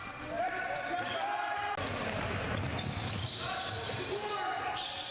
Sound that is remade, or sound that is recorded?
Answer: recorded